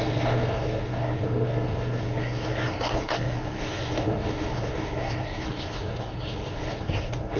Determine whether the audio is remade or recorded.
remade